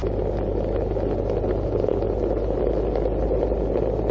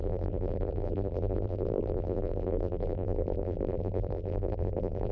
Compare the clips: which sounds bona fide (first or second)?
first